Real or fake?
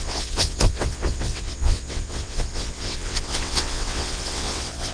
fake